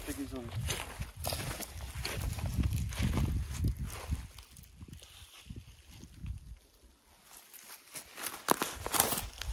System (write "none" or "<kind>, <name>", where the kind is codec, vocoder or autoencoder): none